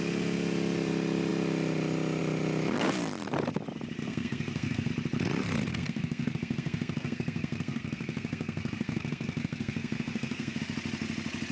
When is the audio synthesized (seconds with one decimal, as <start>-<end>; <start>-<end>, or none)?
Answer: 4.0-4.9; 5.7-10.6